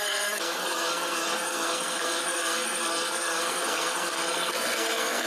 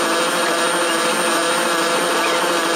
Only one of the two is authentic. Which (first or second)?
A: second